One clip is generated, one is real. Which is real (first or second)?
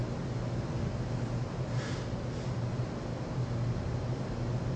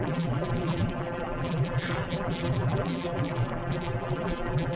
first